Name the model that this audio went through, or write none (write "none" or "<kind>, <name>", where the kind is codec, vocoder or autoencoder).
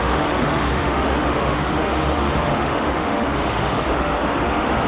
autoencoder, DAC-VAE